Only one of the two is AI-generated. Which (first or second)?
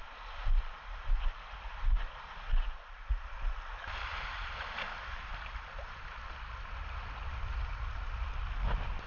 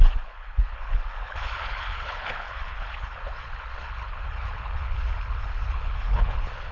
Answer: second